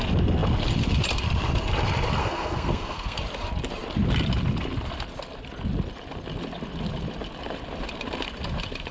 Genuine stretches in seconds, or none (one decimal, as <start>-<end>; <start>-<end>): 0.0-2.2; 3.2-8.9

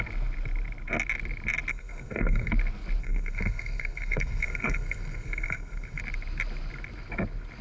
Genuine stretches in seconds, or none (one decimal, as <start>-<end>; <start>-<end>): 0.0-1.7; 2.5-3.0; 6.0-7.6